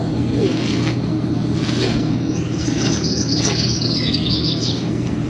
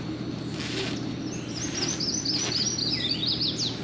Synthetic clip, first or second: first